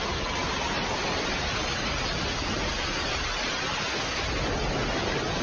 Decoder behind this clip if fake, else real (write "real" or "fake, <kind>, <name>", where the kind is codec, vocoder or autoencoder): real